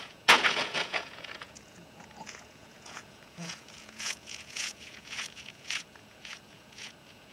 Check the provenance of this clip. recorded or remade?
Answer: remade